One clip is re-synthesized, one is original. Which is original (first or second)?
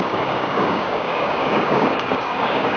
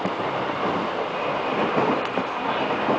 second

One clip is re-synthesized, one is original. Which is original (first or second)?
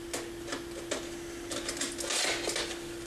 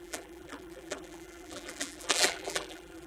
first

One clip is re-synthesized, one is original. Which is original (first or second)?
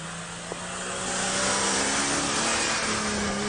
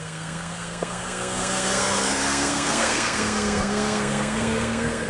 first